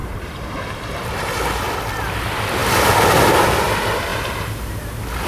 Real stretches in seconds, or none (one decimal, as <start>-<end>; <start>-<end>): 1.1-5.3